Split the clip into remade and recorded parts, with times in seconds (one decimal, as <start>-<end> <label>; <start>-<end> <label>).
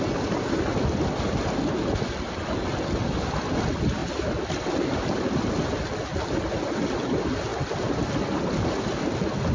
0.0-9.5 recorded